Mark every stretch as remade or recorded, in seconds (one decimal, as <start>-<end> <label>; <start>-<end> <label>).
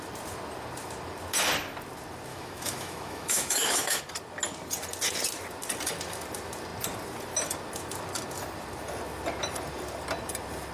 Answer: 0.0-2.3 recorded; 2.3-4.0 remade; 4.0-10.7 recorded